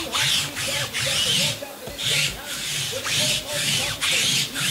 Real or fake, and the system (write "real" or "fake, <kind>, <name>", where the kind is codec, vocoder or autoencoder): real